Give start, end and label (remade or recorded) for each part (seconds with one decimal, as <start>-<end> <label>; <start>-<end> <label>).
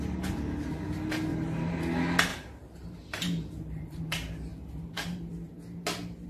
0.0-1.3 recorded; 1.3-1.8 remade; 1.8-2.3 recorded; 2.3-4.0 remade; 4.0-4.5 recorded; 4.5-5.3 remade; 5.3-6.3 recorded